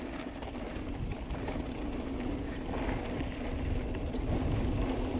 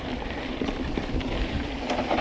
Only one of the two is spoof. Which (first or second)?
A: second